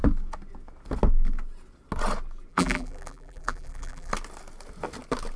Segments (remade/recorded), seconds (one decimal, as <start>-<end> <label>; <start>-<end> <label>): 0.0-2.5 recorded; 2.5-4.1 remade; 4.1-5.4 recorded